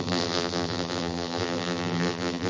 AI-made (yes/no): yes